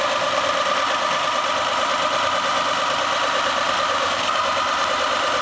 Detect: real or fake real